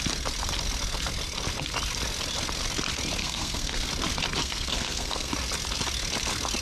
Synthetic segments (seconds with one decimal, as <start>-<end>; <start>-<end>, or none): 3.2-3.9; 4.4-5.3